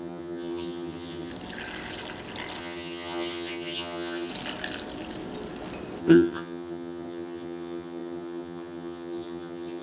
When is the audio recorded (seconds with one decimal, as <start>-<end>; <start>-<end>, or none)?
1.3-2.6; 4.3-6.0